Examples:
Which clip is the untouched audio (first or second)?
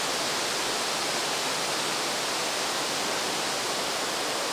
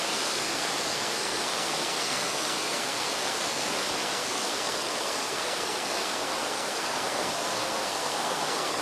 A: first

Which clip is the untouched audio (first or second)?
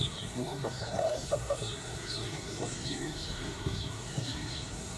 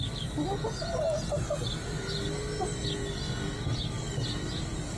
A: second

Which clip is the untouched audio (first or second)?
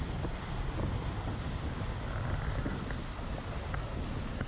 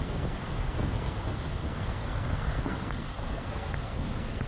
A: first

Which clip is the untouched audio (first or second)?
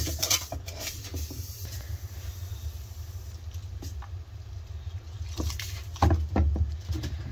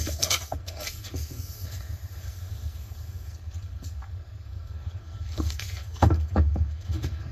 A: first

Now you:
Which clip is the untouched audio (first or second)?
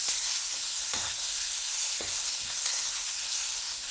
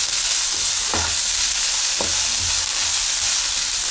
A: second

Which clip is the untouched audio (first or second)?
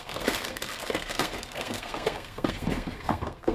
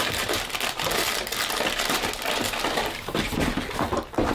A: second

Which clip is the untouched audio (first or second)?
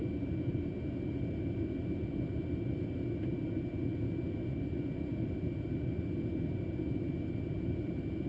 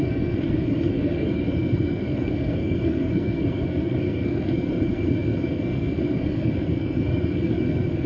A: first